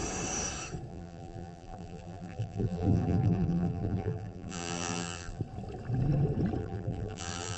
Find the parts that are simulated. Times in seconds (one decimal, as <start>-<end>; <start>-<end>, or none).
0.9-5.4; 6.6-7.6